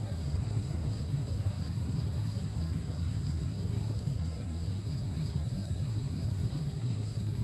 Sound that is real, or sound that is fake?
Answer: fake